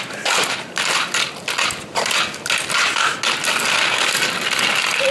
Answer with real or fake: real